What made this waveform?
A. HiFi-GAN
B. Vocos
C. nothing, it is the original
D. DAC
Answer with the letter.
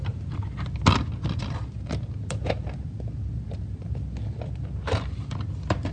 C